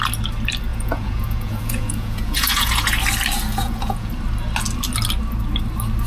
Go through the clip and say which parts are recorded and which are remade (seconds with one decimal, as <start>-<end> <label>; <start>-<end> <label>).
0.0-0.7 recorded; 0.7-3.0 remade; 3.0-3.5 recorded; 3.5-4.1 remade; 4.1-6.1 recorded